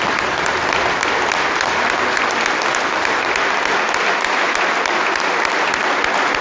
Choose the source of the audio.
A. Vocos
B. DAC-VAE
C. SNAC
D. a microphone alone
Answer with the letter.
D